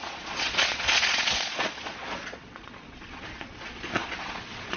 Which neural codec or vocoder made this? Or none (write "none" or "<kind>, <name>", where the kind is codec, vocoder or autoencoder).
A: vocoder, Vocos